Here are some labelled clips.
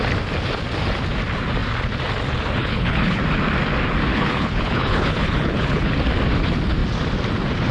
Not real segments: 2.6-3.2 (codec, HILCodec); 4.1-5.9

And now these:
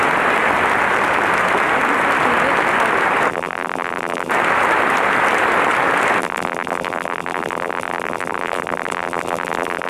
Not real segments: 3.3-4.3 (vocoder, BigVGAN v2); 6.2-9.9

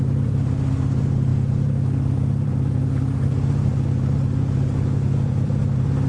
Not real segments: 0.0-6.1 (vocoder, BigVGAN v2)

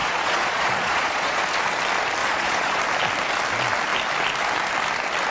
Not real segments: 0.0-1.4 (vocoder, Vocos); 2.2-2.8

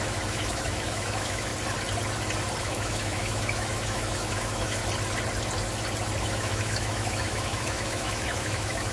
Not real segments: 0.0-1.5 (autoencoder, DAC-VAE); 2.6-4.8; 6.2-8.9

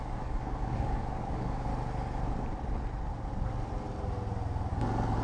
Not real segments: 0.0-1.7 (codec, DAC); 4.7-5.2

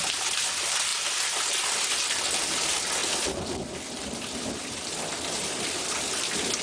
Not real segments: none

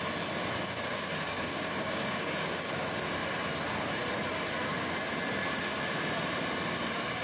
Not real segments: 0.4-2.7 (codec, DAC)